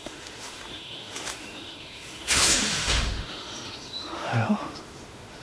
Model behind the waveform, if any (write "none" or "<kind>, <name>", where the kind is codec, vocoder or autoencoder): autoencoder, DAC-VAE